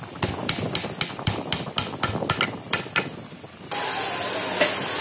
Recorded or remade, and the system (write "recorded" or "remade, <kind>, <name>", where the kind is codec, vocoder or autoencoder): recorded